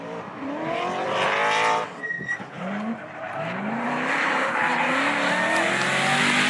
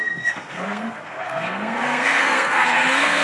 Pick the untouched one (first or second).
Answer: first